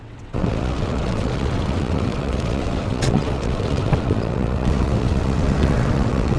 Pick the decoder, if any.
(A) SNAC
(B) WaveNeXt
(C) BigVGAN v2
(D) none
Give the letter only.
B